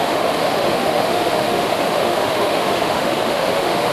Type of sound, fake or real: fake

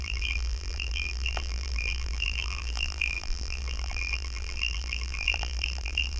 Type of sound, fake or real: fake